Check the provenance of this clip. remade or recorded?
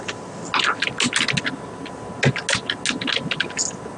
recorded